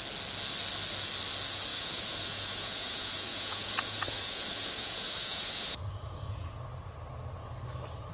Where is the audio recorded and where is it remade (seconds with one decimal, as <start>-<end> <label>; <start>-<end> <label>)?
0.0-1.7 recorded; 1.7-6.6 remade; 6.6-8.1 recorded